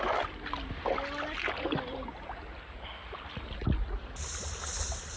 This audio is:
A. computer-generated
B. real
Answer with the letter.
B